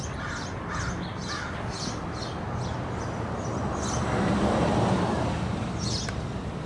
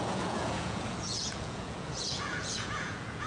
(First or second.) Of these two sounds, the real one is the first